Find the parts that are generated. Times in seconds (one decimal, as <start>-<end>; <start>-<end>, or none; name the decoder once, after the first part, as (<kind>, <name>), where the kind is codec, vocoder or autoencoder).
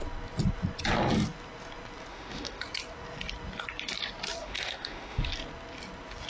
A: 2.1-2.6 (autoencoder, DAC-VAE); 4.4-5.2